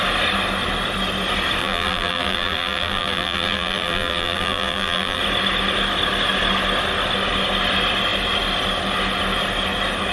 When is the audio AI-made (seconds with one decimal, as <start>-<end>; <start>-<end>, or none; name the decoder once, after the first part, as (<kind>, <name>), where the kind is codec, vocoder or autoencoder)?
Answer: 1.6-5.2 (vocoder, BigVGAN v2)